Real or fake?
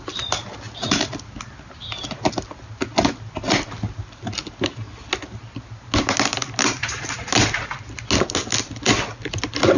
real